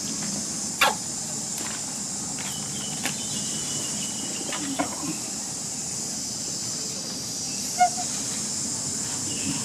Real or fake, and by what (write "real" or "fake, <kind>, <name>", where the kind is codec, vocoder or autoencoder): real